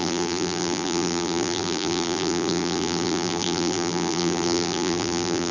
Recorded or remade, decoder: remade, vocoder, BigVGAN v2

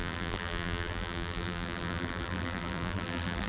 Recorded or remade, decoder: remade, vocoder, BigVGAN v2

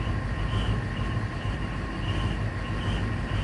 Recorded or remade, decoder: recorded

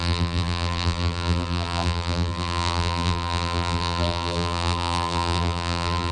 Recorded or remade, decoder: remade, vocoder, BigVGAN v2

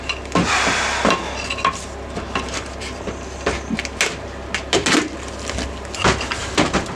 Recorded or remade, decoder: recorded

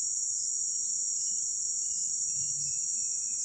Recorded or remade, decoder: recorded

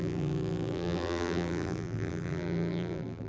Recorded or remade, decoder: remade, vocoder, BigVGAN v2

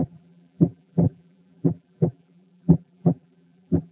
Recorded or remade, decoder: remade, vocoder, BigVGAN v2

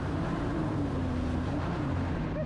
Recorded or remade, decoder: remade, vocoder, BigVGAN v2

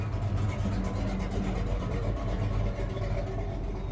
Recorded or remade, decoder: recorded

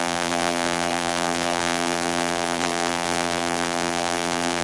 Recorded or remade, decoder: remade, vocoder, BigVGAN v2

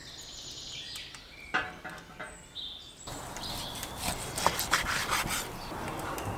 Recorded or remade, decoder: recorded